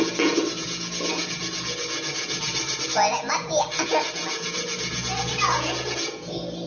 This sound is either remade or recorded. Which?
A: recorded